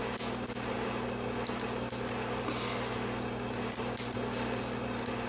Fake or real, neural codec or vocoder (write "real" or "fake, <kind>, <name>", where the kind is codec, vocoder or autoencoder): real